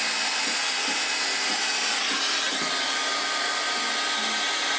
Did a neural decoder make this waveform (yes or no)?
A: no